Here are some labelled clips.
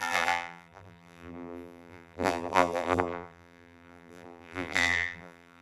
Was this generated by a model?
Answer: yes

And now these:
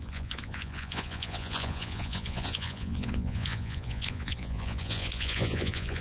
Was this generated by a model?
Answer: yes